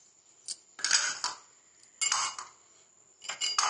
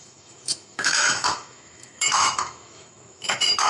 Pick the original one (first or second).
first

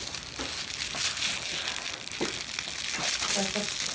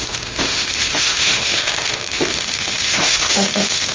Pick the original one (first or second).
first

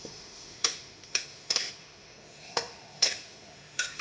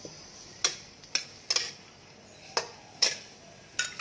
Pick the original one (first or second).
second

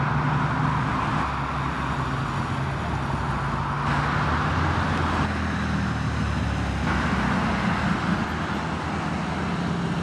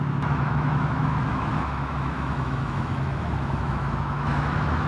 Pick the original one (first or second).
first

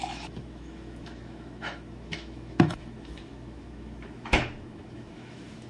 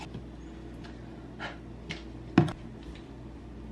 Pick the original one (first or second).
second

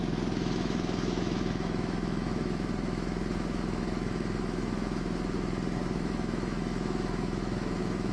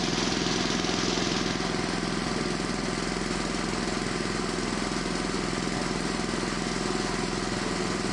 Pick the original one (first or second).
second